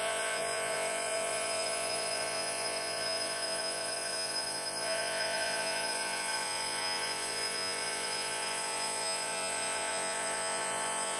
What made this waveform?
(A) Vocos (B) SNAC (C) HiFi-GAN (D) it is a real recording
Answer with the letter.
A